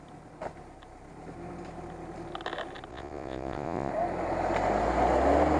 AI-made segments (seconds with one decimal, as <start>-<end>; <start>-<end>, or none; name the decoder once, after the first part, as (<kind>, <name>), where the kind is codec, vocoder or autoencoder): 2.9-3.9 (vocoder, Vocos)